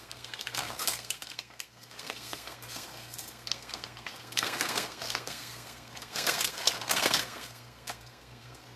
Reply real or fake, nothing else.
fake